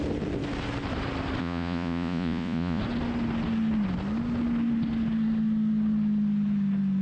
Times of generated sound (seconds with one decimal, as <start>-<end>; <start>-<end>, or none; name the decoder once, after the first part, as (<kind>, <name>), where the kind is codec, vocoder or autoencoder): 1.4-2.8 (vocoder, Vocos)